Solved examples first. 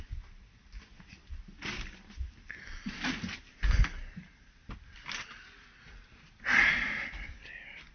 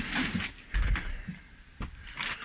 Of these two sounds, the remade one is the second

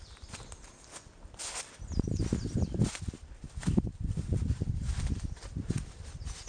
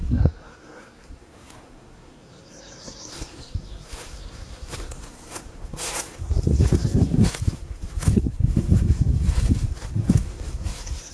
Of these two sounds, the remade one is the second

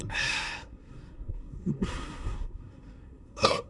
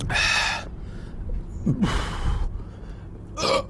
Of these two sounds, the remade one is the first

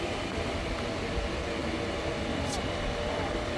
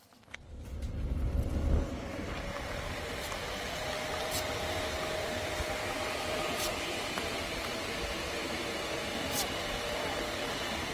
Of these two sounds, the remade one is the second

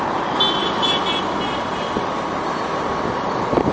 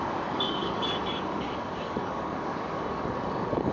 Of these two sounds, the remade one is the second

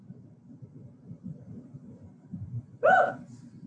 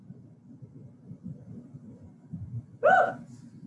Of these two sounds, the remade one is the first